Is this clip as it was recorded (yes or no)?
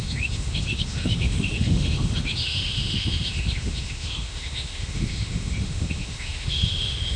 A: no